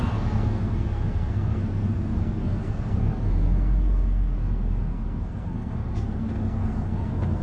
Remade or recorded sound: remade